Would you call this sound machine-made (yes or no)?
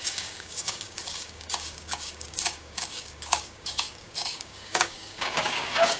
yes